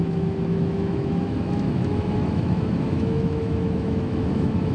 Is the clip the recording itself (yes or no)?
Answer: no